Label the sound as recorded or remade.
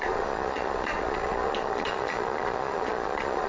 remade